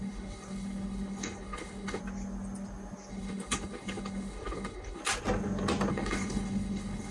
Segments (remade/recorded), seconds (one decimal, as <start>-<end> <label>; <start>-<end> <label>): 0.0-2.0 remade; 2.0-3.1 recorded; 3.1-5.0 remade; 5.0-5.9 recorded; 5.9-7.1 remade

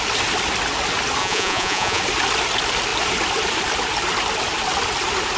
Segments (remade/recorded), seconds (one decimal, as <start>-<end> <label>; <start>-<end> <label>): 0.0-1.2 recorded; 1.2-2.0 remade; 2.0-5.4 recorded

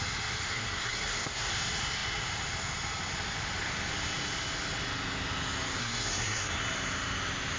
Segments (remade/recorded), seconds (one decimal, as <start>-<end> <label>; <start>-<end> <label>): 0.0-0.5 recorded; 0.5-1.5 remade; 1.5-5.8 recorded; 5.8-6.6 remade; 6.6-7.6 recorded

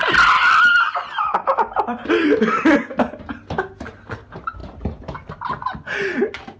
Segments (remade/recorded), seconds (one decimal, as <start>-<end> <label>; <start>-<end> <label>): 0.0-1.2 recorded; 1.2-2.9 remade; 2.9-4.0 recorded; 4.0-4.6 remade; 4.6-5.3 recorded; 5.3-6.6 remade